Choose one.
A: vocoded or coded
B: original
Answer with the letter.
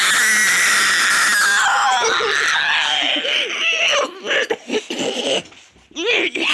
B